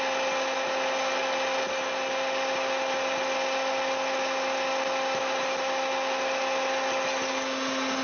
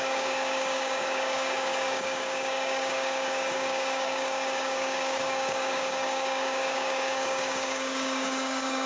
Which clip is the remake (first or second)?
second